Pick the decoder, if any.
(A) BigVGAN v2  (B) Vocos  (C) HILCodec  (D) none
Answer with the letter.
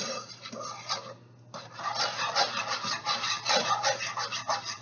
D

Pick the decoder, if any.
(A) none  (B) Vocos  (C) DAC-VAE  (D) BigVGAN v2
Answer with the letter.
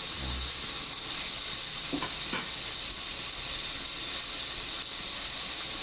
A